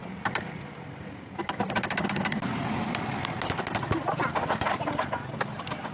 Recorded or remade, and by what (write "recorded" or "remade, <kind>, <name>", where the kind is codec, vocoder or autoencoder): recorded